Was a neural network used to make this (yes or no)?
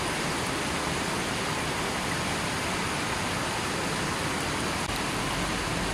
no